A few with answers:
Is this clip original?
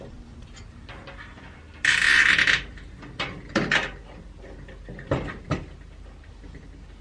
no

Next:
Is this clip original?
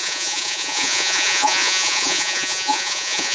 no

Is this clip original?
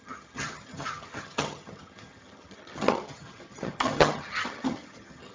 no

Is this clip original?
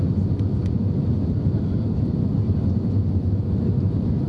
yes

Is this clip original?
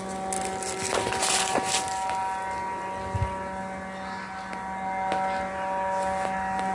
yes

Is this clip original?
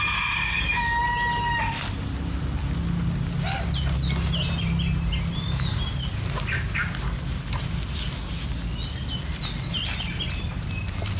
yes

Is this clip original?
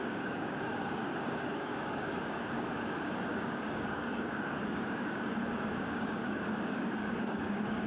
no